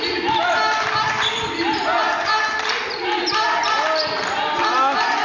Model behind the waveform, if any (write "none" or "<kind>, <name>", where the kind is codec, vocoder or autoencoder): none